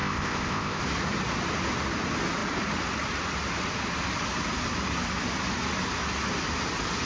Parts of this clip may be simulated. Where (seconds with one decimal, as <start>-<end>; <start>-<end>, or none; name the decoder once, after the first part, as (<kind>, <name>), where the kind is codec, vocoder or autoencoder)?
0.0-0.8 (codec, ZipCodec)